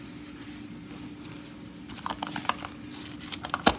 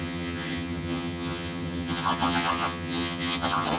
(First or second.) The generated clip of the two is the second